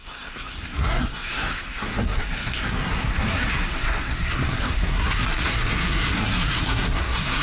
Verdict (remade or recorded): remade